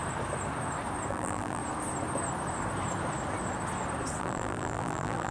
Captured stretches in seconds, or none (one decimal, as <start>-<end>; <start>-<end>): 0.0-1.1; 1.6-4.2